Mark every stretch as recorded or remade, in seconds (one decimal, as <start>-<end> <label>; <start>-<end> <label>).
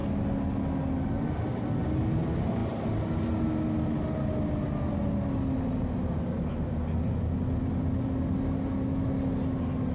0.0-9.9 recorded